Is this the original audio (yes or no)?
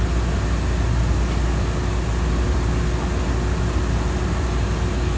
yes